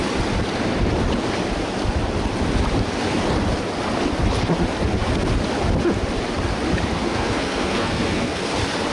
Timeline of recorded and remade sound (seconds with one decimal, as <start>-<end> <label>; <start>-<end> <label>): 0.0-7.0 recorded; 7.0-8.5 remade; 8.5-8.9 recorded